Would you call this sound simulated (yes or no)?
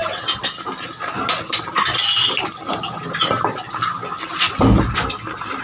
no